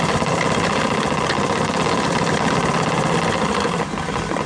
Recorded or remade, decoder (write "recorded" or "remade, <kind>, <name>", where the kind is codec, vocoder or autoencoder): recorded